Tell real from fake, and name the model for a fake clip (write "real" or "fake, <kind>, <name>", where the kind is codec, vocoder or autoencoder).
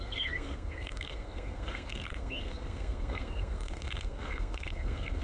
fake, codec, SNAC